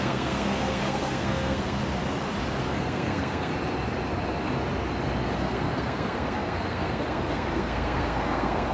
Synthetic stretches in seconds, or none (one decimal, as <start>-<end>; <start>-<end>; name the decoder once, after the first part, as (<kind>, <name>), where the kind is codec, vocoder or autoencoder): 0.0-1.8 (codec, SNAC); 2.6-3.5; 5.4-8.7